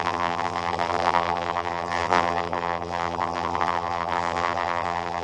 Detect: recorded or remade remade